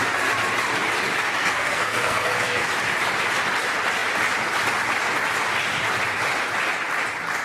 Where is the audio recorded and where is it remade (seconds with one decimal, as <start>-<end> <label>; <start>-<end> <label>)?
0.0-1.4 recorded; 1.4-2.7 remade; 2.7-7.4 recorded